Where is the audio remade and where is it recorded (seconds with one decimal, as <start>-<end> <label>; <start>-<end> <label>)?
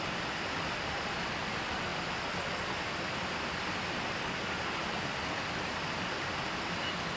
0.0-7.2 recorded